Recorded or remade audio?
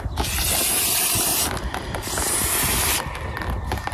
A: recorded